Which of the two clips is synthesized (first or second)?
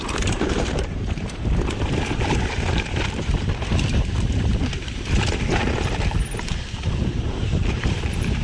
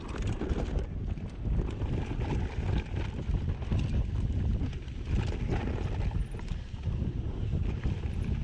first